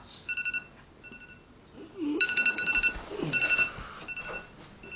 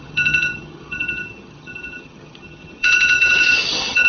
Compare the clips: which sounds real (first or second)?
first